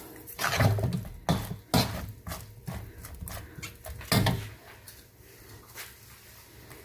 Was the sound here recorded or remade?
recorded